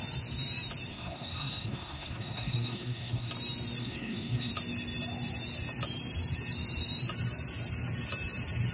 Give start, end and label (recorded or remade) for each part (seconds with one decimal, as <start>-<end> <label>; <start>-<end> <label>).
0.0-0.9 recorded; 0.9-3.3 remade; 3.3-3.8 recorded; 3.8-4.5 remade; 4.5-8.7 recorded

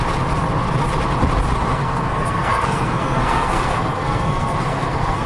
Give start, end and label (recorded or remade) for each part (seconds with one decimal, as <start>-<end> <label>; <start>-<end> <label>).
0.0-1.7 recorded; 1.7-5.3 remade